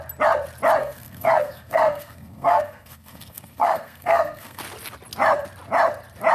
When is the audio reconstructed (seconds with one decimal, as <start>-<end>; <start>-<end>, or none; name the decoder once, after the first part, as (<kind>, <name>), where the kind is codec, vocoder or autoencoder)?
0.8-4.6 (codec, SNAC)